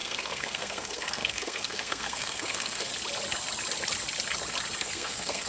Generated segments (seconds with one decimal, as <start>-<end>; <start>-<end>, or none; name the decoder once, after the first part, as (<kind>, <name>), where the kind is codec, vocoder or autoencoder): 0.0-2.9 (codec, SNAC); 4.8-5.5